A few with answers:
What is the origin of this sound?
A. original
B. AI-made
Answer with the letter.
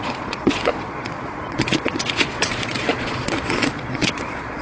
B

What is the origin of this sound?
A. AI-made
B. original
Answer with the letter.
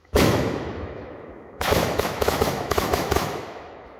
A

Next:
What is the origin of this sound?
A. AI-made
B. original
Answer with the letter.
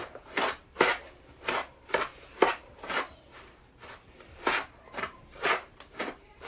A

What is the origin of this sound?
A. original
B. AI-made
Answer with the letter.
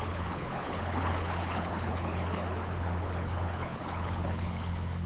B